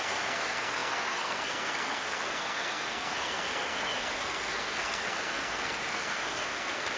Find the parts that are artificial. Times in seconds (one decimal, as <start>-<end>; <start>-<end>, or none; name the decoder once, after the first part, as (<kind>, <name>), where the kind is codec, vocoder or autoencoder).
0.0-7.0 (codec, SNAC)